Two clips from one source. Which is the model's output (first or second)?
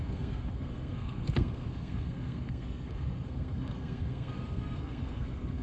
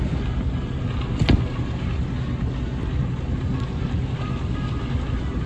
first